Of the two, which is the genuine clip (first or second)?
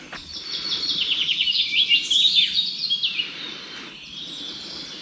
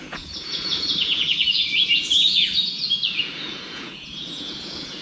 first